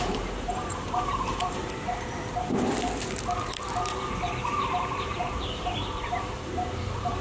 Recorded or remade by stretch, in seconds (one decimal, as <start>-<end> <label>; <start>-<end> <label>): 0.0-1.6 remade; 1.6-4.6 recorded; 4.6-7.2 remade